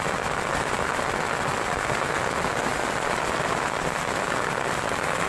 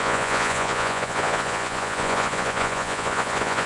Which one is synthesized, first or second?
second